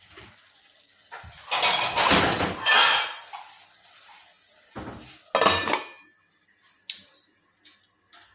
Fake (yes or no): no